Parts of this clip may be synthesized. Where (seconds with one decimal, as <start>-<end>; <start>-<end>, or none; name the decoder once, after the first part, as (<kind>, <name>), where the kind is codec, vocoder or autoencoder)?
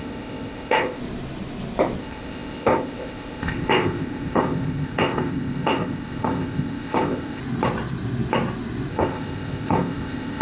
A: 0.0-1.0 (codec, ZipCodec); 2.0-7.4; 8.9-10.4